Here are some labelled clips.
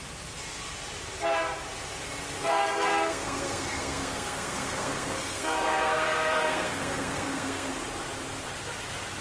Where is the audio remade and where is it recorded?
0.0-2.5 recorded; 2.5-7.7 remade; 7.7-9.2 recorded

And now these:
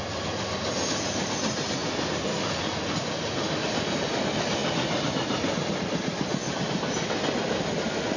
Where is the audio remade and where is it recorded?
0.0-8.2 recorded

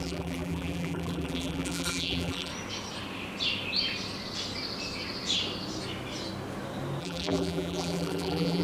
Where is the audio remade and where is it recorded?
0.0-2.5 remade; 2.5-7.0 recorded; 7.0-8.6 remade

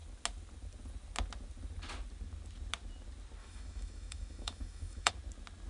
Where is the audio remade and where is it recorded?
0.0-3.4 recorded; 3.4-5.1 remade; 5.1-5.7 recorded